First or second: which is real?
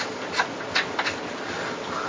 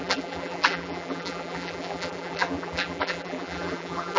first